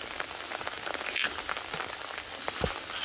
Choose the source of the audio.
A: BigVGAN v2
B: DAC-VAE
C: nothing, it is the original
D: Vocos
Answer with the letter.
C